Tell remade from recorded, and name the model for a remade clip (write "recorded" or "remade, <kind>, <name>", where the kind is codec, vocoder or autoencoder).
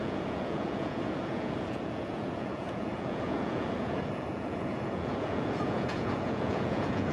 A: remade, vocoder, Vocos